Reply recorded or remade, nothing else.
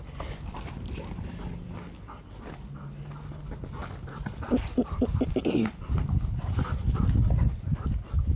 recorded